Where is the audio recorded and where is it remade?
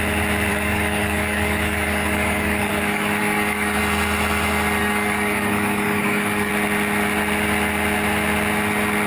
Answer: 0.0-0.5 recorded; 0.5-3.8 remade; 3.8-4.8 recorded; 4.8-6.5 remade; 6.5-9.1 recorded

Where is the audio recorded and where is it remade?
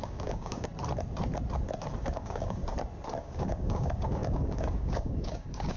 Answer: 0.0-0.7 remade; 0.7-2.0 recorded; 2.0-2.6 remade; 2.6-3.2 recorded; 3.2-5.8 remade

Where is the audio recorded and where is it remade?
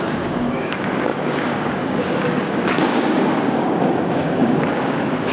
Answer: 0.0-5.3 remade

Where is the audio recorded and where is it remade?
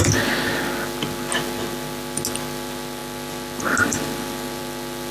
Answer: 0.0-5.1 recorded